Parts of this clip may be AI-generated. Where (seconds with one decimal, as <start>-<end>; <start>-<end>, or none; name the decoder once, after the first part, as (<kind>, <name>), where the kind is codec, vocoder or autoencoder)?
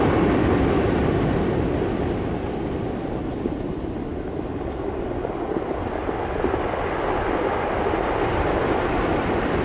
none